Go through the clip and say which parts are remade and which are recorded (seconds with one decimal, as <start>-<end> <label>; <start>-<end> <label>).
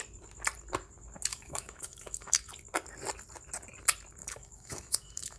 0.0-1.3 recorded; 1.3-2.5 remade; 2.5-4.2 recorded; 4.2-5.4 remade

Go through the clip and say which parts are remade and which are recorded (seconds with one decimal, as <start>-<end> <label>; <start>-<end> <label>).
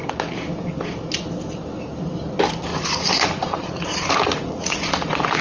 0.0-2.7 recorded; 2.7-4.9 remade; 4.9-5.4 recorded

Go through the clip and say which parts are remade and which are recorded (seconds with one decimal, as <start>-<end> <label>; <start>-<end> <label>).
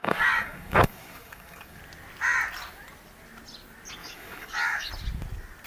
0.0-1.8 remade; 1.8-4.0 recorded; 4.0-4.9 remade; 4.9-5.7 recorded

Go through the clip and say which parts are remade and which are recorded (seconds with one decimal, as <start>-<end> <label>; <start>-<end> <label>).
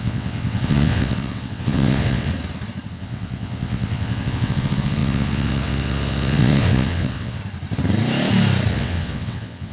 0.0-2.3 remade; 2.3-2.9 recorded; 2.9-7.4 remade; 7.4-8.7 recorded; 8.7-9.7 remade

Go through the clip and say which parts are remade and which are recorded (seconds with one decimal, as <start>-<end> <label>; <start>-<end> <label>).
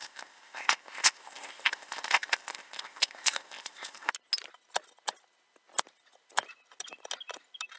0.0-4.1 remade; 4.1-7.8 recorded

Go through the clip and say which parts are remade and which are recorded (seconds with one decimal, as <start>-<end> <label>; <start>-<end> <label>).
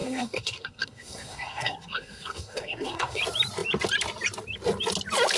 0.0-3.2 remade; 3.2-5.4 recorded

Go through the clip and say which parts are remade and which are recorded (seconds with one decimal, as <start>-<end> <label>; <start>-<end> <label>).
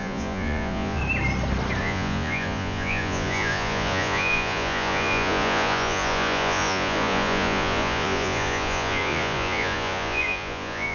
0.0-1.0 remade; 1.0-1.8 recorded; 1.8-10.9 remade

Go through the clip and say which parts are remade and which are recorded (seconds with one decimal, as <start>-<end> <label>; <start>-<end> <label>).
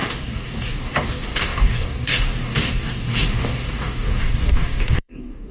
0.0-5.5 remade